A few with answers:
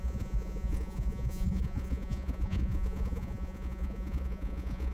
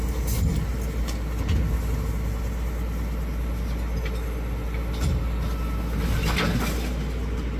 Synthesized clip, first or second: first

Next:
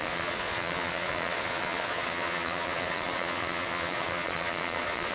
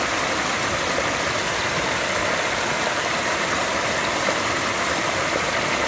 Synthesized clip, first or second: first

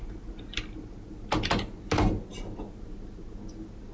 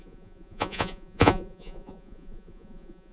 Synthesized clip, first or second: second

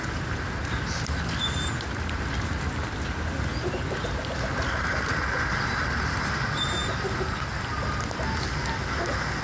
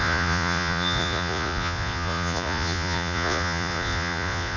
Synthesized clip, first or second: second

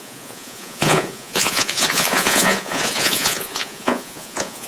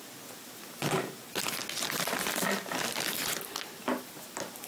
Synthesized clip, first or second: first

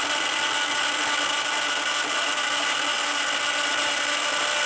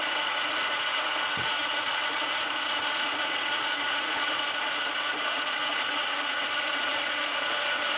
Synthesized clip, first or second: second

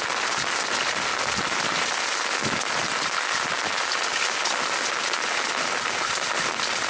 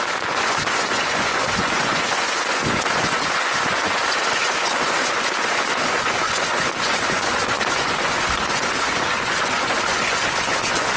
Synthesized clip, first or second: second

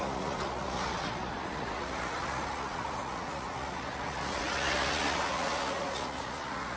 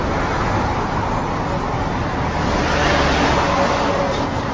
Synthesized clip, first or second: first